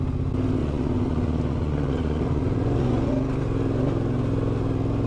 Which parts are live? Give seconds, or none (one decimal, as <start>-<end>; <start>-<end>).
0.0-0.6; 3.1-5.1